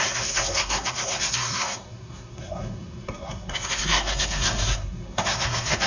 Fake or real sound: fake